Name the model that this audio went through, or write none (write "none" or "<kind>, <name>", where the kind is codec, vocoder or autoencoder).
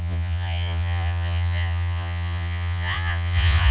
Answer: vocoder, Vocos